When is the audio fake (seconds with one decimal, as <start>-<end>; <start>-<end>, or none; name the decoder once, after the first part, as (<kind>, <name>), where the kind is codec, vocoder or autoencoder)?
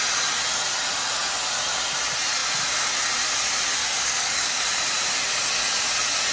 3.8-4.6 (codec, DAC)